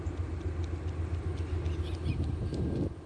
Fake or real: real